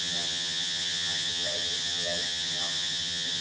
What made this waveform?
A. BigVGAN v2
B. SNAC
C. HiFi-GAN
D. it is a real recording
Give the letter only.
C